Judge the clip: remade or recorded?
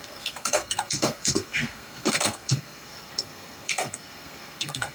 remade